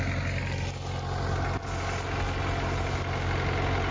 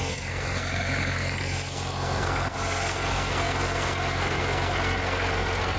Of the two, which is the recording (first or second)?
first